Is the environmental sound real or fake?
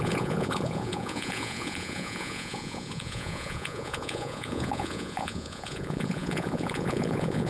fake